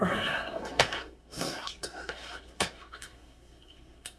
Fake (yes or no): yes